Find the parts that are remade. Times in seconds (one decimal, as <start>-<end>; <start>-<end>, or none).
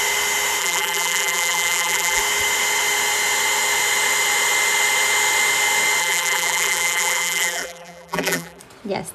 0.6-2.2; 6.0-8.6